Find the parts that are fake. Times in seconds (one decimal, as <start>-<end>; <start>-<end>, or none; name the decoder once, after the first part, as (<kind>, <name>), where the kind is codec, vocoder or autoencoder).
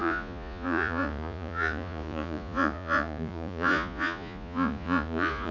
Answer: 0.0-5.5 (vocoder, Vocos)